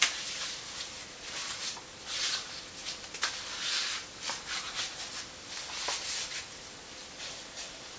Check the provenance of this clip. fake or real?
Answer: real